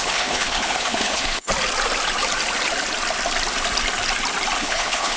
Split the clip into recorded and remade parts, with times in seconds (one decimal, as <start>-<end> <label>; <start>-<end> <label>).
0.0-1.5 remade; 1.5-4.6 recorded; 4.6-5.2 remade